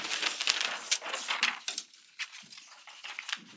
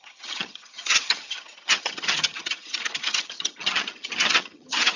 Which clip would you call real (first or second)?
first